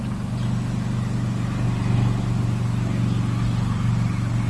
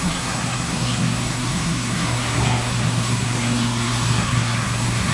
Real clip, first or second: first